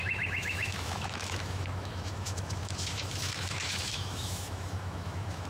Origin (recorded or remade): remade